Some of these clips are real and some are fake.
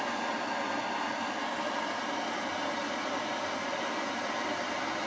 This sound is real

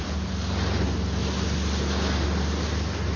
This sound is real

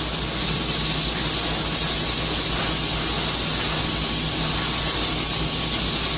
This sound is real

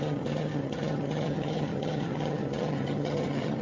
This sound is fake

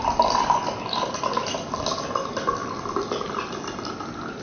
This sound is real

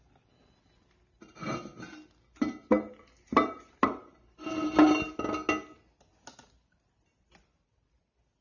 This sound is real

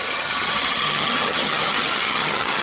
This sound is fake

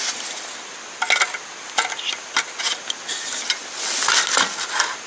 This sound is real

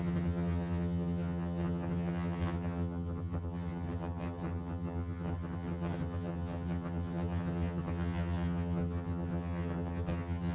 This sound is fake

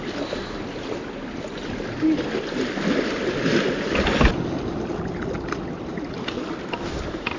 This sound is real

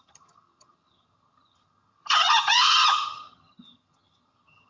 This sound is fake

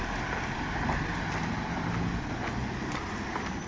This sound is real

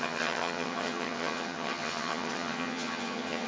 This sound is fake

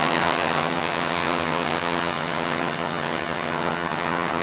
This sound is fake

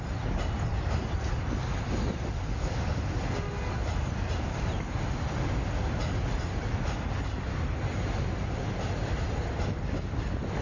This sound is real